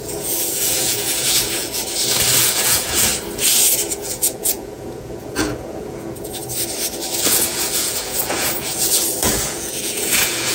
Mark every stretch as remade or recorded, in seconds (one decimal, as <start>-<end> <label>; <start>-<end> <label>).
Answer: 0.0-1.8 remade; 1.8-2.4 recorded; 2.4-3.1 remade; 3.1-3.9 recorded; 3.9-6.4 remade; 6.4-7.2 recorded; 7.2-10.5 remade